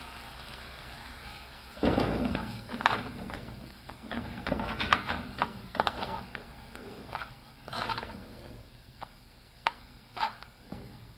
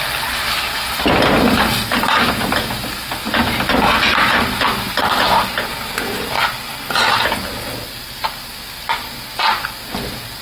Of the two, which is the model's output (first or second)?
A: first